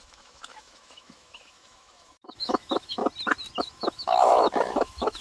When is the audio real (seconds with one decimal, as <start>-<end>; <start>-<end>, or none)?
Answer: 3.0-3.6